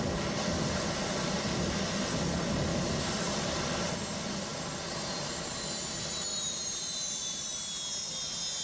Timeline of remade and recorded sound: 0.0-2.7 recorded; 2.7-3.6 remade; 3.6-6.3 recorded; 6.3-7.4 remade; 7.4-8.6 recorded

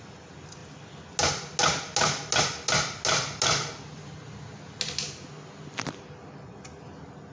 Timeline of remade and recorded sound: 0.0-7.3 recorded